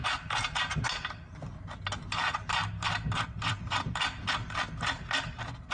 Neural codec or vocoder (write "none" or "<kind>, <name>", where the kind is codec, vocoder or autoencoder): none